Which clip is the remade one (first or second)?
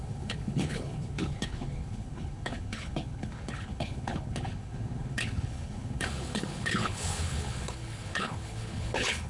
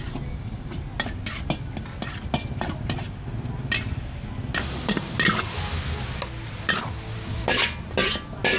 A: first